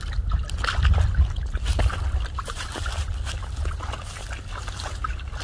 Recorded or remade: recorded